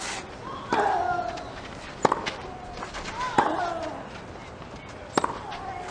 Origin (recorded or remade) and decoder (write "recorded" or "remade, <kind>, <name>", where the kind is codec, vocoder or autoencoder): recorded